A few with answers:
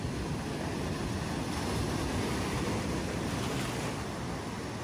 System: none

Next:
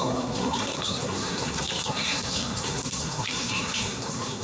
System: codec, SNAC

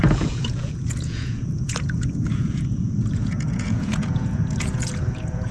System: vocoder, Vocos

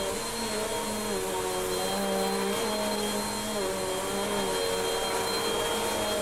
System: none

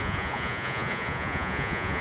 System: vocoder, Vocos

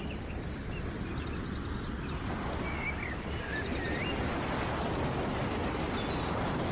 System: none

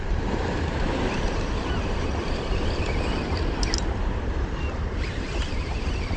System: vocoder, BigVGAN v2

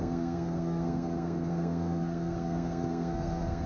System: codec, SNAC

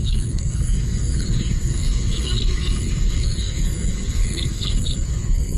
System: codec, SNAC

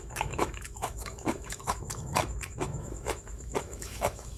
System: autoencoder, DAC-VAE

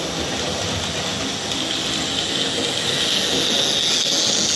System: none